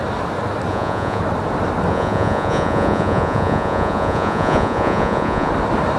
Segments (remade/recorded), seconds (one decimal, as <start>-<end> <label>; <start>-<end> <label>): 0.0-0.7 recorded; 0.7-1.2 remade; 1.2-1.9 recorded; 1.9-5.5 remade; 5.5-6.0 recorded